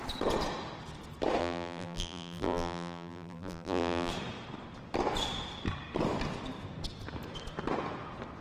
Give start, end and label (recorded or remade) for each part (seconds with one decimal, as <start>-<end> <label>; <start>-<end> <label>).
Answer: 0.0-1.4 recorded; 1.4-4.1 remade; 4.1-8.4 recorded